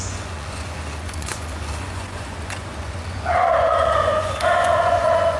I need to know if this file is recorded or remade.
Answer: remade